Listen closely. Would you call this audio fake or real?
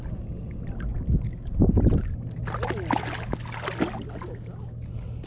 real